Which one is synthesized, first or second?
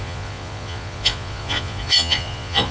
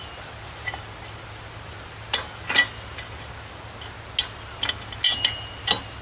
first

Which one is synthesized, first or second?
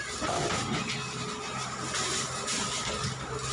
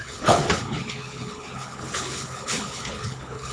second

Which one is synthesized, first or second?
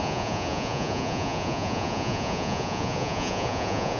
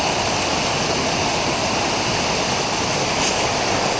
first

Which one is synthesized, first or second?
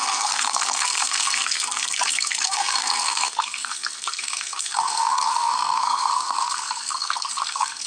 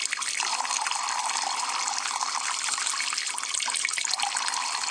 first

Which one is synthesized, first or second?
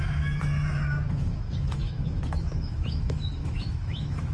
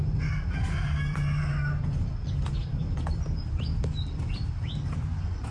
first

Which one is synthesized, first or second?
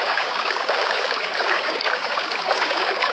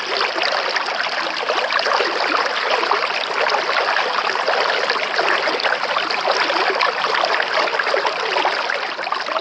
first